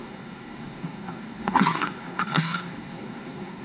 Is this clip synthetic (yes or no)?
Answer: yes